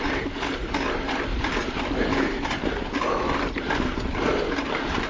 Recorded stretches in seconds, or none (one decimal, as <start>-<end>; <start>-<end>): 0.0-5.1